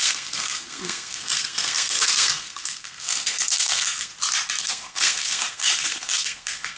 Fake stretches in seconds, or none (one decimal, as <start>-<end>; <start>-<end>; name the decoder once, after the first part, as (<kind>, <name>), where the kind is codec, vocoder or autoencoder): 0.0-4.1 (codec, SNAC); 4.6-6.8

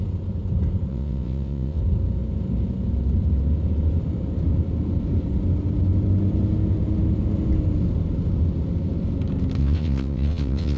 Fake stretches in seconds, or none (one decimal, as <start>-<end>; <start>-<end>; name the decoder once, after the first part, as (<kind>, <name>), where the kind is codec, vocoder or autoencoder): 0.9-1.8 (vocoder, WaveNeXt); 9.6-10.8

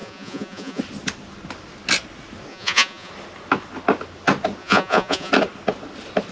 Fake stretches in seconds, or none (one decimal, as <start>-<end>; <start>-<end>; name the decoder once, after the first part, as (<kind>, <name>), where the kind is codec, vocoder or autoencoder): 0.0-0.8 (vocoder, Vocos); 2.5-3.1; 4.6-5.3

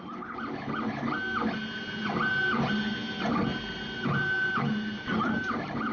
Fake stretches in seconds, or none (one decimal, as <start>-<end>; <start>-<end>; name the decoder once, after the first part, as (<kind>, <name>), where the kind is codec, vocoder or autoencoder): none

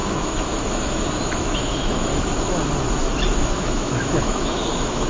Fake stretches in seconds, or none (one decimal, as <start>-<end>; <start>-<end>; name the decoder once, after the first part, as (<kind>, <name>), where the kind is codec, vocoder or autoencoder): 0.0-2.1 (autoencoder, DAC-VAE); 3.4-5.1

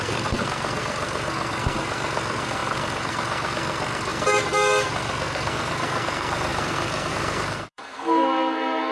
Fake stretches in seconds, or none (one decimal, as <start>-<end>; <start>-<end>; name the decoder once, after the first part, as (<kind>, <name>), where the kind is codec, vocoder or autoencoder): 0.0-8.9 (codec, SNAC)

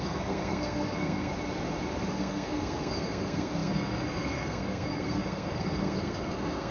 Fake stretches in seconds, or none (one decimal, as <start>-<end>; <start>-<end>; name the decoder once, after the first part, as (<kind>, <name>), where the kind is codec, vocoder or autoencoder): 0.0-1.3 (codec, SNAC); 2.1-6.7